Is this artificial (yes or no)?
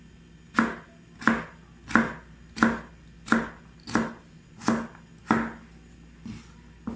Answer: no